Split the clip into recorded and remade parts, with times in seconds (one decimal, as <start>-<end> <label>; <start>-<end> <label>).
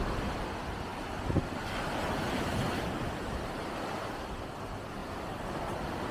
0.0-5.0 recorded; 5.0-5.6 remade; 5.6-6.1 recorded